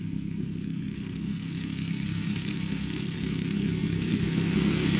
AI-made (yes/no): yes